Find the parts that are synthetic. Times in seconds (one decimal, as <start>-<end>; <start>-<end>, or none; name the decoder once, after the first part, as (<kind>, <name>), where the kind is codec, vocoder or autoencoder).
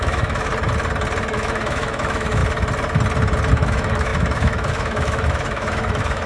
0.0-0.5 (autoencoder, DAC-VAE); 1.3-2.4; 3.5-6.3